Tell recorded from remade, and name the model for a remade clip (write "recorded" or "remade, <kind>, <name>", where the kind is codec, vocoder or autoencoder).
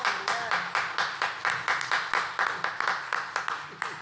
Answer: recorded